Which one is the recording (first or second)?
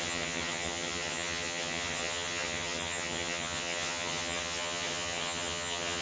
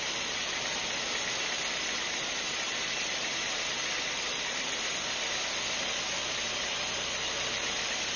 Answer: second